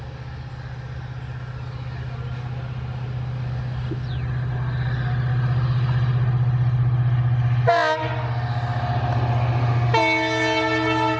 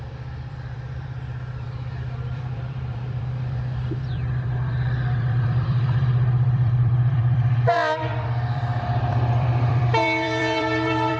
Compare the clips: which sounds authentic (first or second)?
first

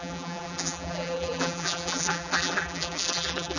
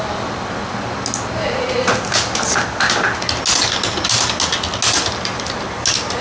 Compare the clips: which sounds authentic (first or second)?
second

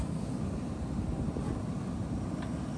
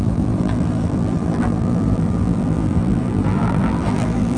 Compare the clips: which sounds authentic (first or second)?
first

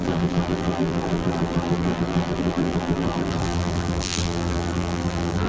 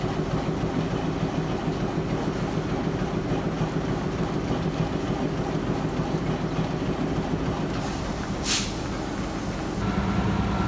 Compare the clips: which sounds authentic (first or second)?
second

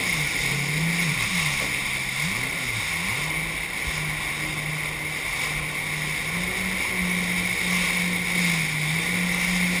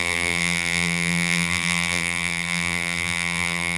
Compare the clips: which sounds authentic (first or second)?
first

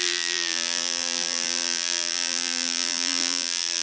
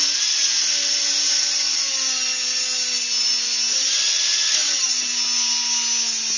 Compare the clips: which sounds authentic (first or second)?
second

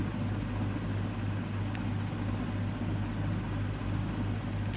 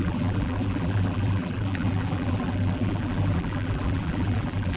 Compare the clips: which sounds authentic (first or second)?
first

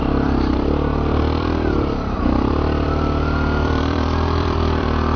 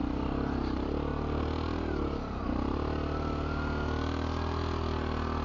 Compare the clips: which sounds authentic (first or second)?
second